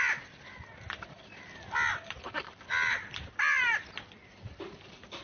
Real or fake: real